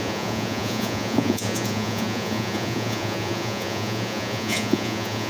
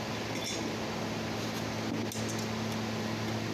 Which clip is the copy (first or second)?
first